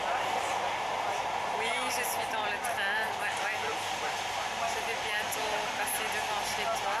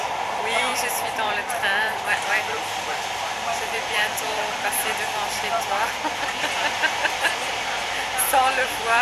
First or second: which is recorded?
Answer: first